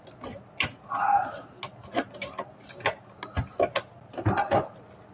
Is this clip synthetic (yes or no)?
no